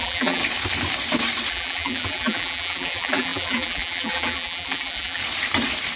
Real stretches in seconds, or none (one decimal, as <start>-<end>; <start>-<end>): 0.4-1.5; 5.2-6.0